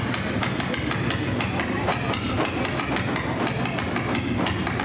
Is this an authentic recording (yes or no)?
yes